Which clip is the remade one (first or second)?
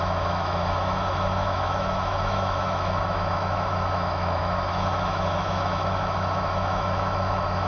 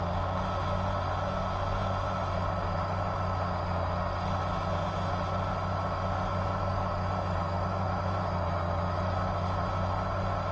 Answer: first